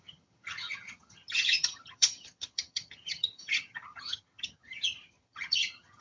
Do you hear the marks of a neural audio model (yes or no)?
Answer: yes